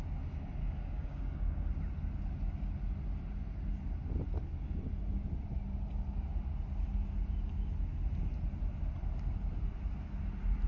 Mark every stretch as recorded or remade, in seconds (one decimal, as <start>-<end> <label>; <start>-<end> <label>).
0.0-0.6 recorded; 0.6-1.7 remade; 1.7-10.7 recorded